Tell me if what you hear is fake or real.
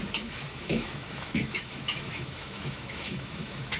fake